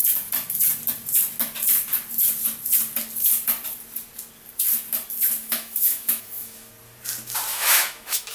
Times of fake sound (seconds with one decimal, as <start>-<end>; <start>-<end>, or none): 5.4-6.7; 7.5-8.3